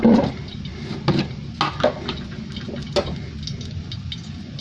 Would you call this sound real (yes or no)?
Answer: yes